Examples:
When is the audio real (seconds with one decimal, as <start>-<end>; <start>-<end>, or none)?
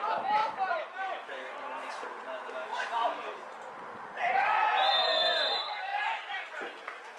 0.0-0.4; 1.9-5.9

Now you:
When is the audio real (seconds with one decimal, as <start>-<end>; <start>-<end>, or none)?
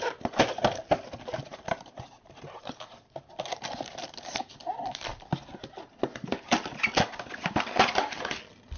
0.0-1.5; 4.6-8.8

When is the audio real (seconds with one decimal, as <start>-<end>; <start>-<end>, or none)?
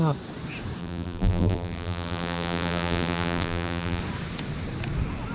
0.0-0.8; 4.0-5.3